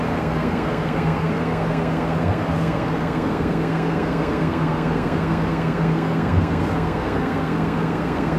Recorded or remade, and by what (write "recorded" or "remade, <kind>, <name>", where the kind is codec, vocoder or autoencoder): remade, codec, SNAC